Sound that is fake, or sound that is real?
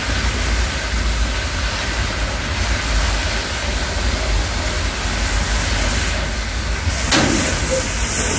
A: real